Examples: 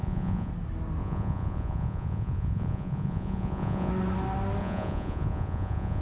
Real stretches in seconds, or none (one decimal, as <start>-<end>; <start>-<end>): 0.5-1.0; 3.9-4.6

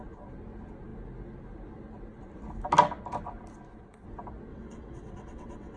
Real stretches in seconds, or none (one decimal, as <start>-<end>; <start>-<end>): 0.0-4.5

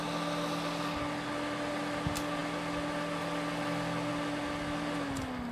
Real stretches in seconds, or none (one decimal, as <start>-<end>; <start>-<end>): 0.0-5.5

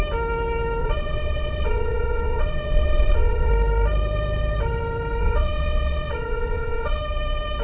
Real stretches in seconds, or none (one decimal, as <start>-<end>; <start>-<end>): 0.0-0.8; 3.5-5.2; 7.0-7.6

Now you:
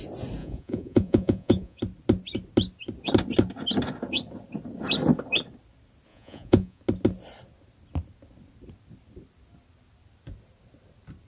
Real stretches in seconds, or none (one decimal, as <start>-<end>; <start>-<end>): 0.0-0.4; 1.8-6.1; 6.8-11.3

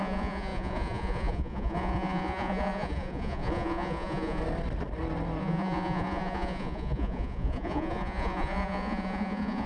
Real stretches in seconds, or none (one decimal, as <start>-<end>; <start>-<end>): 4.4-5.4